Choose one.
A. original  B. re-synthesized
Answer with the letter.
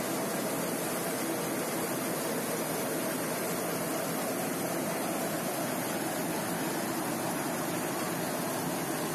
A